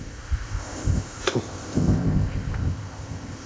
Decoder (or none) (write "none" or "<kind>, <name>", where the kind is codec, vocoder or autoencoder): codec, ZipCodec